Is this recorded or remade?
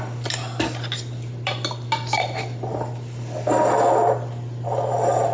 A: recorded